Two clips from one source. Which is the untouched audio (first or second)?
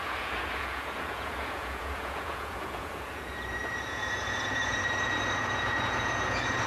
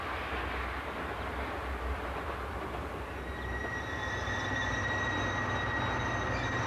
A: second